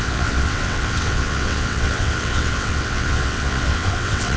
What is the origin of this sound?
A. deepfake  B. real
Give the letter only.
A